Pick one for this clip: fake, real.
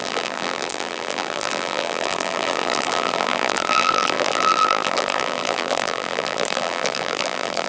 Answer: fake